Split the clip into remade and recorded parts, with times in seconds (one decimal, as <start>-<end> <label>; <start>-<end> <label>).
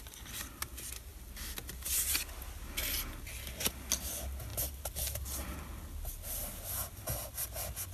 0.0-7.9 recorded